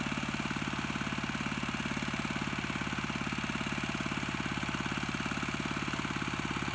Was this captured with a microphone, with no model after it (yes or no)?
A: yes